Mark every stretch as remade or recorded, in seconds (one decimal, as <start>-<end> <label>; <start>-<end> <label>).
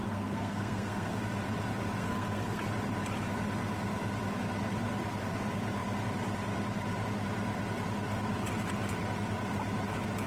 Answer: 0.0-1.2 remade; 1.2-2.0 recorded; 2.0-2.6 remade; 2.6-10.3 recorded